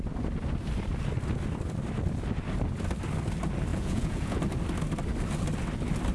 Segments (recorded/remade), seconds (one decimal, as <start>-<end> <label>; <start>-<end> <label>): 0.0-3.7 recorded; 3.7-4.4 remade; 4.4-6.1 recorded